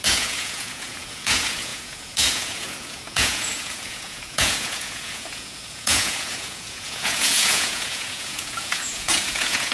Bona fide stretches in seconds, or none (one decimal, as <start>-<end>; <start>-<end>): none